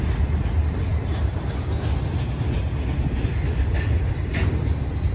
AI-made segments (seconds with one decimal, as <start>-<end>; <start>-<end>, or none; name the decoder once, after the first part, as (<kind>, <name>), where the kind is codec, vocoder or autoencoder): none